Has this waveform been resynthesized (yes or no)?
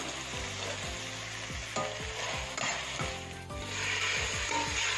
no